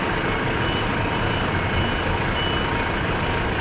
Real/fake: real